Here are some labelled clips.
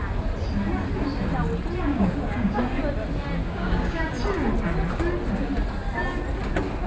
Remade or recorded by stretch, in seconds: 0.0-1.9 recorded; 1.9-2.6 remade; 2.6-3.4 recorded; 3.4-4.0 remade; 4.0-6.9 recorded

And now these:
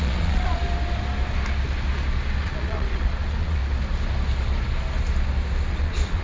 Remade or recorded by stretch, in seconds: 0.0-0.6 remade; 0.6-2.4 recorded; 2.4-3.6 remade; 3.6-5.7 recorded; 5.7-6.2 remade